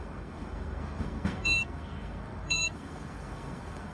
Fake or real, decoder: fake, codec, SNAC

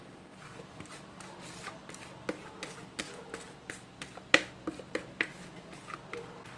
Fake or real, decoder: real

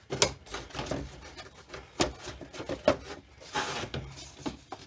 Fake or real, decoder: real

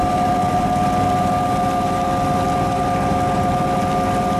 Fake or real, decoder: real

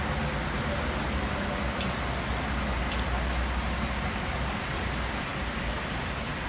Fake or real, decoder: real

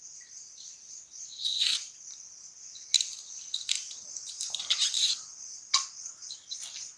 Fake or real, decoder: real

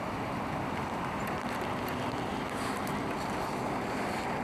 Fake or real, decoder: real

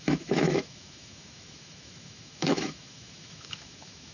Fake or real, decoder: fake, autoencoder, DAC-VAE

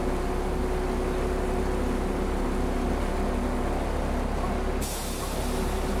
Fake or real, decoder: real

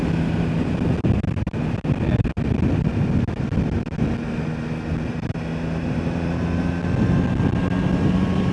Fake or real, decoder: real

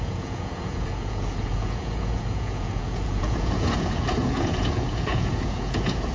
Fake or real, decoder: fake, vocoder, Vocos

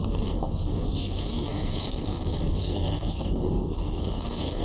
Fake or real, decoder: fake, codec, SNAC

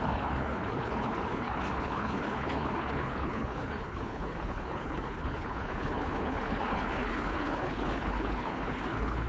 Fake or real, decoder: fake, codec, HILCodec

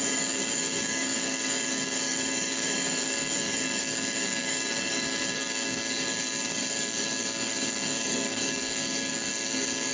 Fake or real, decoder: fake, codec, DAC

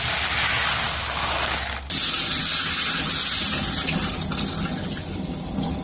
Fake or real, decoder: real